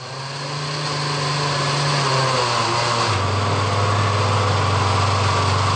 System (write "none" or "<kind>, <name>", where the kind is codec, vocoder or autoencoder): none